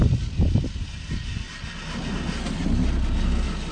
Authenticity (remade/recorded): recorded